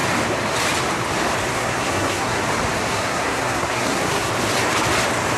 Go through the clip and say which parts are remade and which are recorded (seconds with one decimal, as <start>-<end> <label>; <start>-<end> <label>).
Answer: 0.0-1.5 recorded; 1.5-2.4 remade; 2.4-2.9 recorded; 2.9-4.3 remade; 4.3-5.4 recorded